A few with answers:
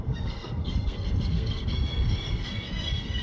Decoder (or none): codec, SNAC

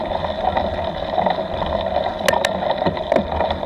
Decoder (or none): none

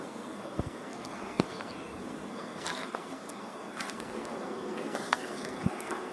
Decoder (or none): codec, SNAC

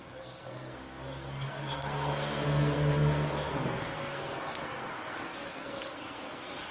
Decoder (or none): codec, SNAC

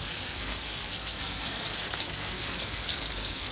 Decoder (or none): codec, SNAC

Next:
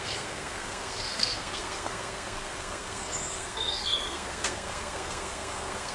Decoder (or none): codec, SNAC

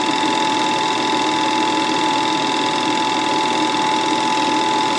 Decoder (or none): none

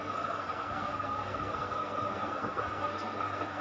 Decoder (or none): codec, SNAC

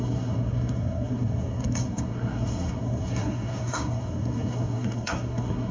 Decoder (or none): codec, SNAC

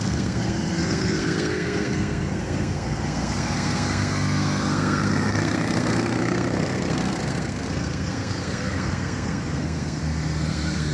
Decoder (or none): codec, SNAC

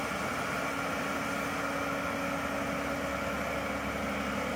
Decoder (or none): none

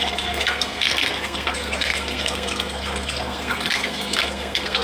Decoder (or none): codec, SNAC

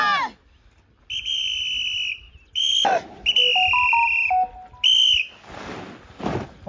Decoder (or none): none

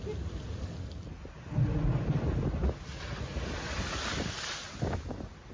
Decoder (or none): none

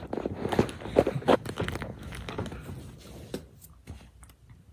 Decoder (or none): none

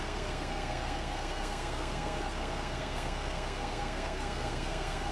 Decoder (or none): codec, SNAC